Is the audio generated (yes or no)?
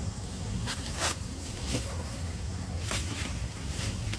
yes